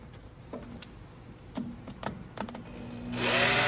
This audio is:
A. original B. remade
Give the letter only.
A